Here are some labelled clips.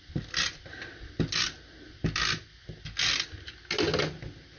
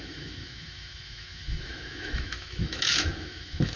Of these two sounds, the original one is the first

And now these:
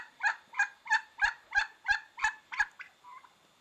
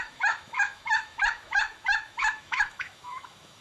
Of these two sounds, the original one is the first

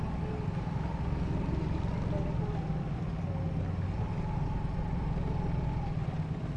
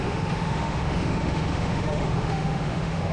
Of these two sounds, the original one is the first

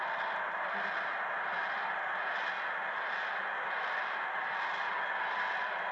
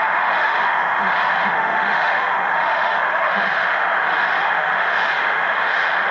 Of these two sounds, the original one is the first